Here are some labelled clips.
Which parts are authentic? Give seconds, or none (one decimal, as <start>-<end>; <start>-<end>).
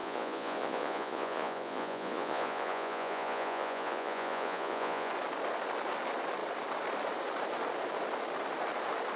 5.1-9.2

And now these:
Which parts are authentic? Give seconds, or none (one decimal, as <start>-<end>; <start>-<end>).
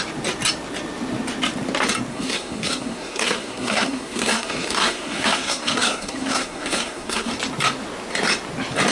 0.0-2.1; 7.3-8.9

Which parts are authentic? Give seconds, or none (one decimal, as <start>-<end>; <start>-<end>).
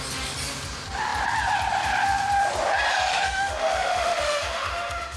0.0-3.1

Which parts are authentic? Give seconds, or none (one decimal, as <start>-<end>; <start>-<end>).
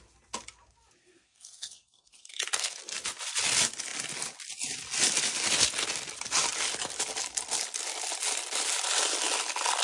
0.0-1.0; 2.8-9.8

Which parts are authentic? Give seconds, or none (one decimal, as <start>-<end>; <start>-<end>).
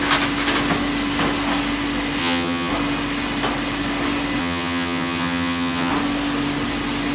0.0-2.2; 2.7-4.4; 5.9-7.1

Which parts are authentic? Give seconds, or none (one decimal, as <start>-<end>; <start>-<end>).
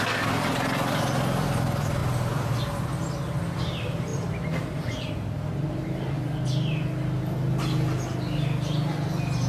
0.0-4.1; 5.1-9.5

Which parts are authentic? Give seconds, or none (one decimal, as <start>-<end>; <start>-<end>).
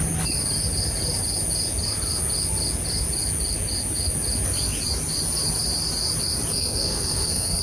0.0-6.5